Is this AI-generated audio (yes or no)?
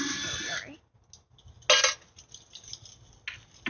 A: no